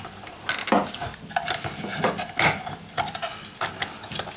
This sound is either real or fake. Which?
real